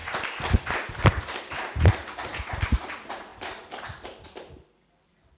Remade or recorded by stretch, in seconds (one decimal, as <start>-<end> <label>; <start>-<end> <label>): 0.0-5.4 recorded